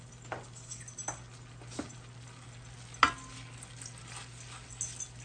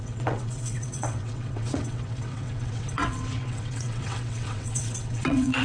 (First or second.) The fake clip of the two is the second